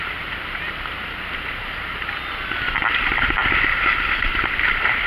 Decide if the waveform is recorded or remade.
recorded